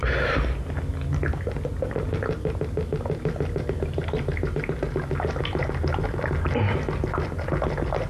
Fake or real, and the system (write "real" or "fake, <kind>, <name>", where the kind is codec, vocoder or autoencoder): real